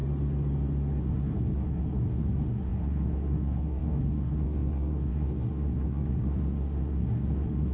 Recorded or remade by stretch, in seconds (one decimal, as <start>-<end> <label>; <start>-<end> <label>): 0.0-1.0 recorded; 1.0-7.7 remade